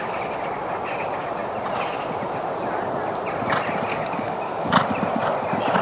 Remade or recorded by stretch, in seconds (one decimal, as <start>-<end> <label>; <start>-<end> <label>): 0.0-3.9 recorded; 3.9-4.7 remade; 4.7-5.8 recorded

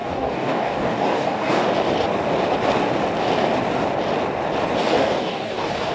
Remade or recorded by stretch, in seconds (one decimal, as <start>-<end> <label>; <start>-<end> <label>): 0.0-1.7 remade; 1.7-4.8 recorded; 4.8-5.9 remade

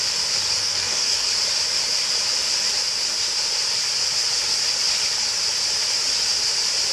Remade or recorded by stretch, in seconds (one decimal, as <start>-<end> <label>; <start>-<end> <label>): 0.0-0.6 recorded; 0.6-1.3 remade; 1.3-6.9 recorded